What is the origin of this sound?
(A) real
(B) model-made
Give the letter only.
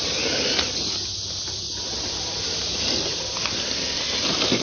A